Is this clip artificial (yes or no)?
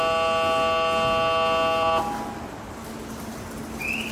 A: no